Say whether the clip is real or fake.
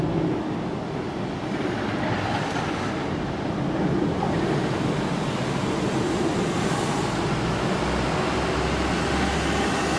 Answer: real